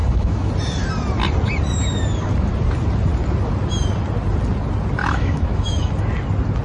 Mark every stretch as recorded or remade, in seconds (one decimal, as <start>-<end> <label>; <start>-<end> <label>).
0.0-0.5 remade; 0.5-5.0 recorded; 5.0-5.9 remade; 5.9-6.6 recorded